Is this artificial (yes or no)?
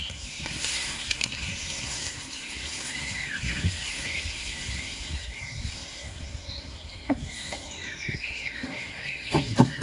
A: yes